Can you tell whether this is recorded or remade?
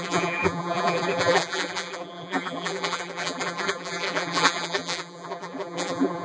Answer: remade